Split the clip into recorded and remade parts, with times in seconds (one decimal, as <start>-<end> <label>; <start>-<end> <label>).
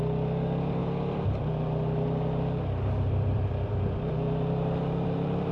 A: 0.0-5.5 remade